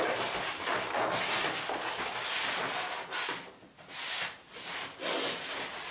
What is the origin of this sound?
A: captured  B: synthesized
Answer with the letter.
A